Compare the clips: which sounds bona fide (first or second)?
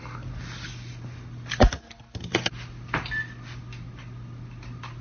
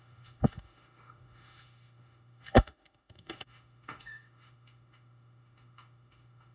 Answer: first